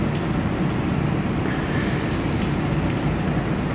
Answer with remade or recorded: recorded